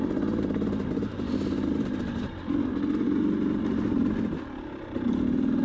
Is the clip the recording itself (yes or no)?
yes